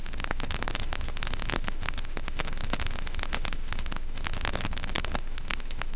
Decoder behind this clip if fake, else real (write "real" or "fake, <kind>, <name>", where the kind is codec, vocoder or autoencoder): fake, autoencoder, DAC-VAE